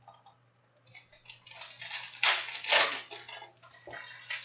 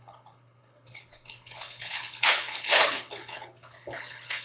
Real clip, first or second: first